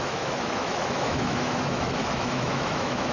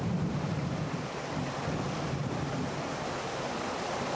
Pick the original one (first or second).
second